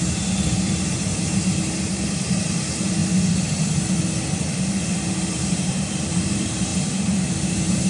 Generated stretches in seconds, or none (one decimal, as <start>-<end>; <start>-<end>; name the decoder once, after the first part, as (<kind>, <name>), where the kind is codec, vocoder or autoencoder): 0.0-3.0 (vocoder, BigVGAN v2); 4.9-6.7; 7.3-7.9